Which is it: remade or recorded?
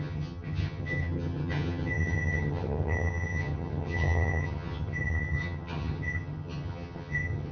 remade